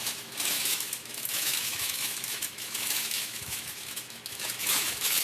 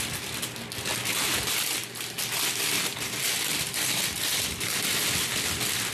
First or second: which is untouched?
second